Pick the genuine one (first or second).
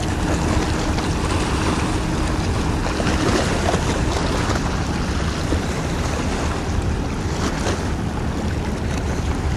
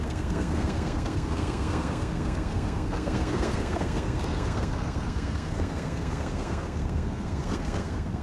first